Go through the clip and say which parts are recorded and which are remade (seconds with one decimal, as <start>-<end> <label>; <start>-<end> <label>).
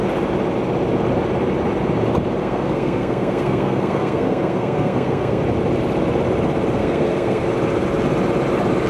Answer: 0.0-2.4 recorded; 2.4-5.4 remade; 5.4-6.8 recorded; 6.8-7.5 remade; 7.5-8.9 recorded